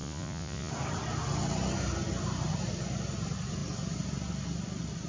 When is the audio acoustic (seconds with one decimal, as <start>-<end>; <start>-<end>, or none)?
0.7-5.1